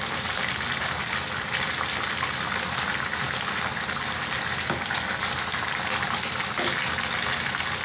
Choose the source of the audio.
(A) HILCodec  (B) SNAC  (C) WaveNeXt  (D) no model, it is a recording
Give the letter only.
D